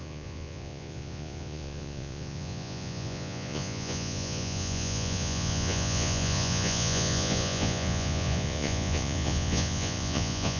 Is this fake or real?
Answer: fake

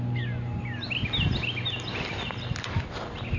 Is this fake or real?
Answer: real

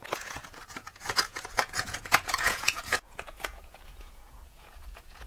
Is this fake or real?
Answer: fake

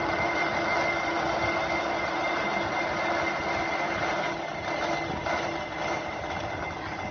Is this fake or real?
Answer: real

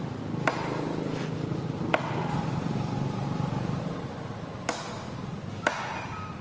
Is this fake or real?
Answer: real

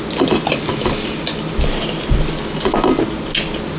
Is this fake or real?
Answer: real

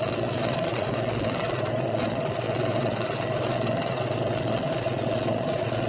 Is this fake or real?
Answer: fake